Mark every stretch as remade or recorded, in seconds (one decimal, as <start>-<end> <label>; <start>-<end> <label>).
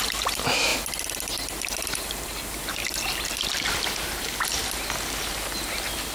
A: 0.0-6.1 recorded